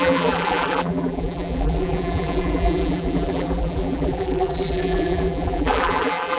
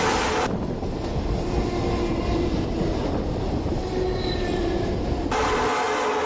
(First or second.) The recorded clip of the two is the second